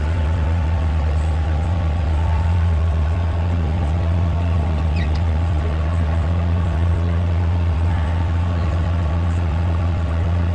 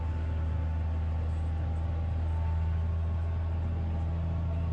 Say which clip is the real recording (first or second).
second